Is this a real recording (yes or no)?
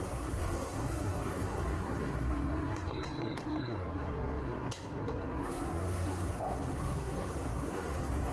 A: no